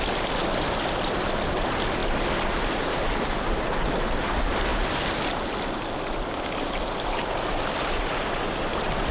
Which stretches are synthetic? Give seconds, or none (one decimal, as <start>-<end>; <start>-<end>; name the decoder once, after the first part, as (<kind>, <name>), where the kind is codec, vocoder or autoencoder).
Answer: none